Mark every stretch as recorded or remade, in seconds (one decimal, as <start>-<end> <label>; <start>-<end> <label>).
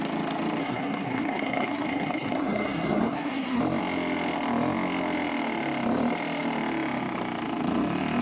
0.0-0.6 recorded; 0.6-3.6 remade; 3.6-8.2 recorded